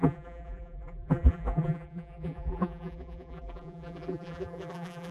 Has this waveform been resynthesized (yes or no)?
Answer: yes